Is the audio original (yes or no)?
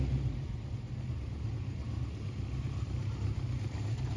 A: yes